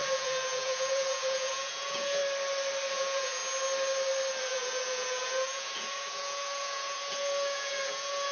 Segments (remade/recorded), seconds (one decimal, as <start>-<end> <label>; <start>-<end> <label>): 0.0-2.2 remade; 2.2-2.9 recorded; 2.9-3.4 remade; 3.4-4.4 recorded; 4.4-8.3 remade